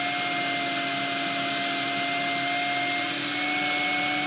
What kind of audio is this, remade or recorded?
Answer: recorded